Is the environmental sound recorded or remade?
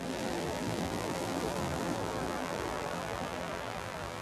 remade